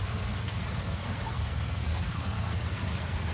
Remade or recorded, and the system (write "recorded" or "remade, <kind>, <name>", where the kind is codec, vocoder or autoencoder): remade, codec, SNAC